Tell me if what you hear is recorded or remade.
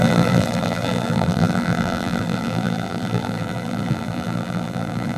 remade